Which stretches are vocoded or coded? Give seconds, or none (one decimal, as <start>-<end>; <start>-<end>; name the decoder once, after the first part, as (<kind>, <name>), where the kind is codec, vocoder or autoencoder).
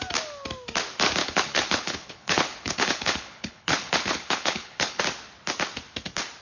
1.2-5.0 (codec, HILCodec)